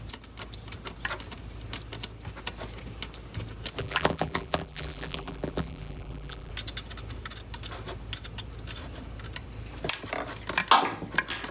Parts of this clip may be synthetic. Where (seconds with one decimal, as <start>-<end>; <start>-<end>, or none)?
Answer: 3.8-6.5